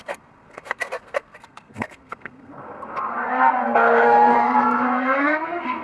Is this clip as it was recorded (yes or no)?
no